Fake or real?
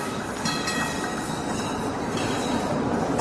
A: real